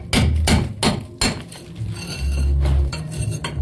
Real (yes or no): yes